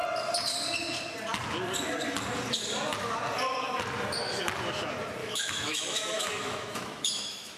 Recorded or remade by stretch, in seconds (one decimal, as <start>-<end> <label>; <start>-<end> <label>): 0.0-5.2 recorded; 5.2-7.6 remade